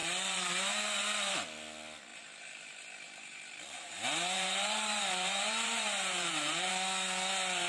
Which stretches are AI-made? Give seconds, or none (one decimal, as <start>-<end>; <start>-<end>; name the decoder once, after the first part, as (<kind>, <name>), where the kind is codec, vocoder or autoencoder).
0.0-1.3 (vocoder, BigVGAN v2); 2.1-6.7